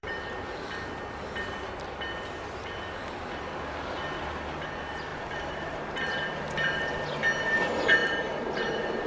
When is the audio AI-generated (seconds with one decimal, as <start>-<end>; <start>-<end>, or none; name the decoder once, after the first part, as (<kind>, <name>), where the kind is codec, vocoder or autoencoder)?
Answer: 0.0-0.6 (vocoder, BigVGAN v2); 5.1-6.4; 8.0-9.1